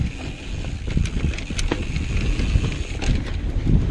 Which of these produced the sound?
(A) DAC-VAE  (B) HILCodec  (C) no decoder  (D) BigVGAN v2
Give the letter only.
C